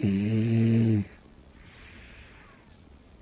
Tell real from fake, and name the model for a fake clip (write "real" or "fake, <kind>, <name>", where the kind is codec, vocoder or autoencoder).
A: fake, vocoder, Vocos